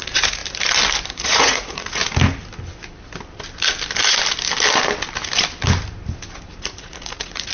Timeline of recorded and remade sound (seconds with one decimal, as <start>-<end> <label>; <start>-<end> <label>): 0.0-0.4 remade; 0.4-1.1 recorded; 1.1-2.0 remade; 2.0-6.5 recorded; 6.5-7.5 remade